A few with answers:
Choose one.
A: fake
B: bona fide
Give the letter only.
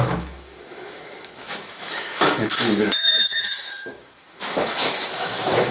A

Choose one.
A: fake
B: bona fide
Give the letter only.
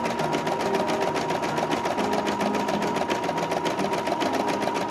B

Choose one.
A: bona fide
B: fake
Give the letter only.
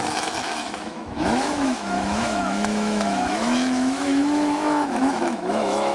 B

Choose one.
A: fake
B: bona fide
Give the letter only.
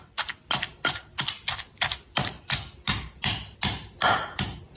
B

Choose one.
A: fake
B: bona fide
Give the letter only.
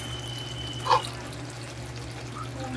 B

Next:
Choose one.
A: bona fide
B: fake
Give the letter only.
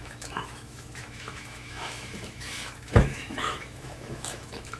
B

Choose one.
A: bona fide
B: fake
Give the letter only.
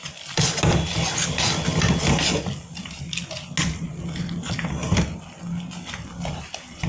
A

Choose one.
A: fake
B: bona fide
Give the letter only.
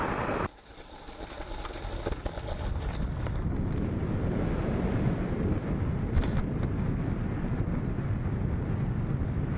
B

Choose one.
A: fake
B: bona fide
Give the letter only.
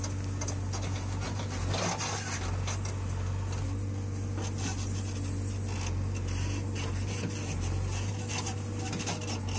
B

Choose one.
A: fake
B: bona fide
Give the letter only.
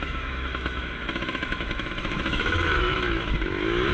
A